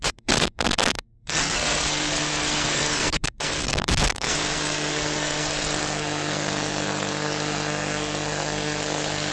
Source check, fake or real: fake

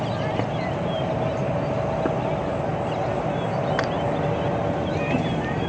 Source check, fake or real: real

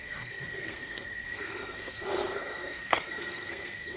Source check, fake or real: fake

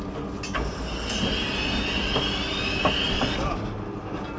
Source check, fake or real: real